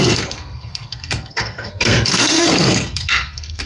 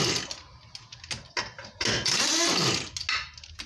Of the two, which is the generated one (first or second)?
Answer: first